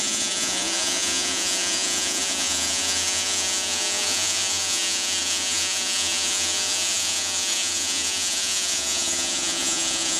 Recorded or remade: remade